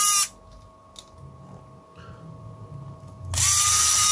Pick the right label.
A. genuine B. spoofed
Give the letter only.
A